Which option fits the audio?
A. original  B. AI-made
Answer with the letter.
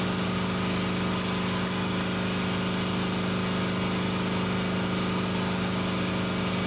A